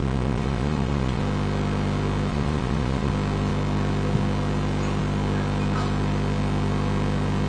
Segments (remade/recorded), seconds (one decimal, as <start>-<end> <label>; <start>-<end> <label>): 0.0-1.2 remade; 1.2-2.3 recorded; 2.3-3.1 remade; 3.1-7.5 recorded